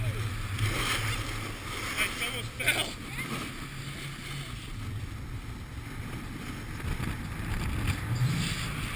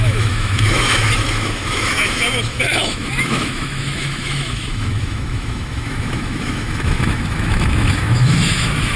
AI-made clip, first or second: second